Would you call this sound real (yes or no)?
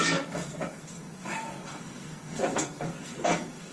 no